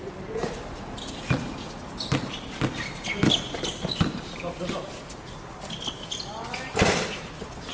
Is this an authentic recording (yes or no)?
yes